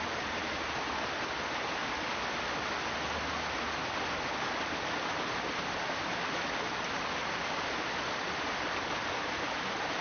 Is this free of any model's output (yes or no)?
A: yes